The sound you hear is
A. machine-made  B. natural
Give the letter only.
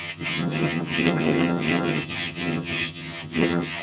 A